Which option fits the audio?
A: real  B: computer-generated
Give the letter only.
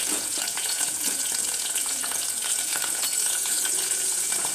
B